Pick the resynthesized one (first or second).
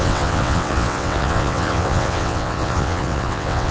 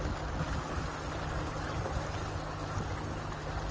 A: first